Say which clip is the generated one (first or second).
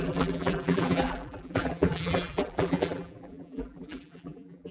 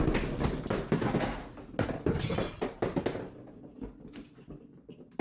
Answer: first